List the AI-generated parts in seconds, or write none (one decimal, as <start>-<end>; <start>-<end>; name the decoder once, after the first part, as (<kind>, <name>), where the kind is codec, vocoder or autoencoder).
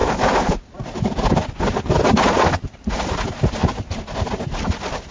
none